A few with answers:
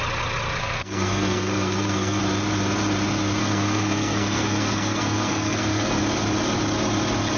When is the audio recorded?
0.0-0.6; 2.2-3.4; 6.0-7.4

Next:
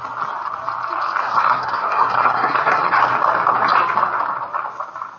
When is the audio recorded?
0.0-1.2; 3.0-5.2

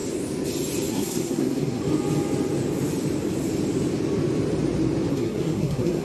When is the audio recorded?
0.0-0.9; 1.8-5.1

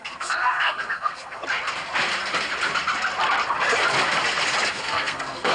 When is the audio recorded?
1.4-4.7